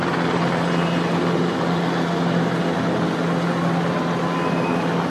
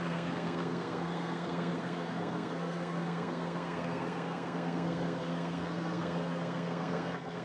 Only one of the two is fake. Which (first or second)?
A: second